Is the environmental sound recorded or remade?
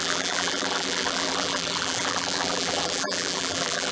remade